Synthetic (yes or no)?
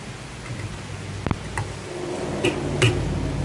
no